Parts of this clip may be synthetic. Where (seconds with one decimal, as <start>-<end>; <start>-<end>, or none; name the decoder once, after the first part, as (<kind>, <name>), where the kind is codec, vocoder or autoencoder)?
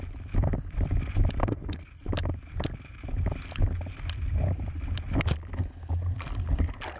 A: 1.4-1.9 (codec, SNAC)